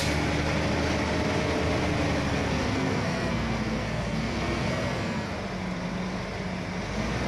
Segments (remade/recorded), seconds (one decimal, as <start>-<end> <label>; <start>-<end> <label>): 0.0-2.3 recorded; 2.3-5.3 remade; 5.3-7.3 recorded